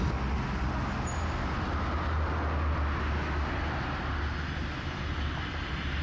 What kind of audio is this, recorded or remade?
recorded